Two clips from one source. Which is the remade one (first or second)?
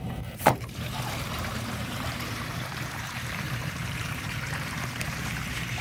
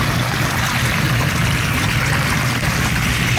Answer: first